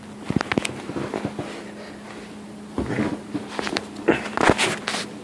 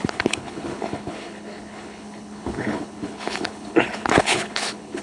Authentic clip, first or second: first